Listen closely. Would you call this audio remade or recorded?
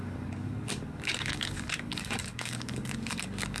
remade